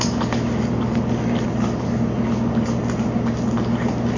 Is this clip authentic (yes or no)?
yes